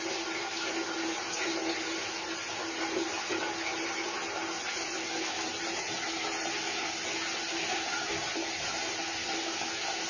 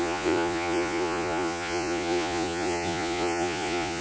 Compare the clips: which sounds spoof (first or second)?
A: second